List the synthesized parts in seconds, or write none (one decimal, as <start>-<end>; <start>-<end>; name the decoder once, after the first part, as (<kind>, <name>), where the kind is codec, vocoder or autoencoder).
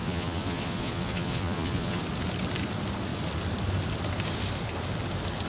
0.0-2.0 (vocoder, Vocos)